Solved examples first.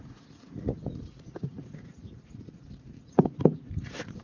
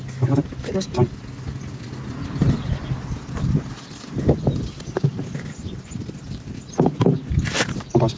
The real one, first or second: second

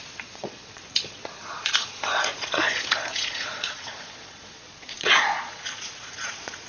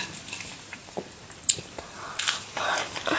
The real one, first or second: second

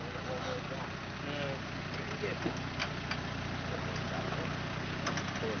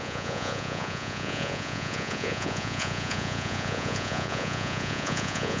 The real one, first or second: first